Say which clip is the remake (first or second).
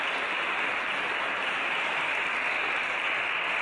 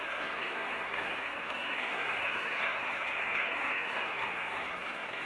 second